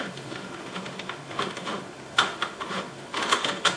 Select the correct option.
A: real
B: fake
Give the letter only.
B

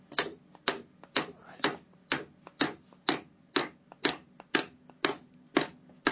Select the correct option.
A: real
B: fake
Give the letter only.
A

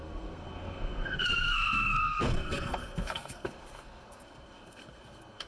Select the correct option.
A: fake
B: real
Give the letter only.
A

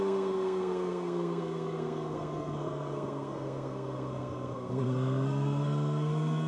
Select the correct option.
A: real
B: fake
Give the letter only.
B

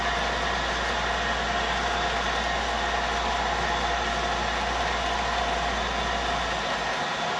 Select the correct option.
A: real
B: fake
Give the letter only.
A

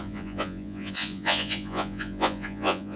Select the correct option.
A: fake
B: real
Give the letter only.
A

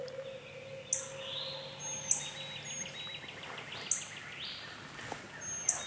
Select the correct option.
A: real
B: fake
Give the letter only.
A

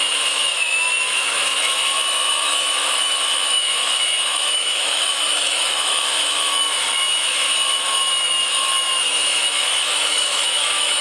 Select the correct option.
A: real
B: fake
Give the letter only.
B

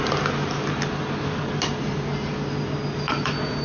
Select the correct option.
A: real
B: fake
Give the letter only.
A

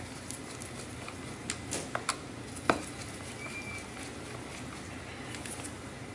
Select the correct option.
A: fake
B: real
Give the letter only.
B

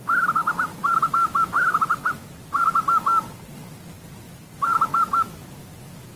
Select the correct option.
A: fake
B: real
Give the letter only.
B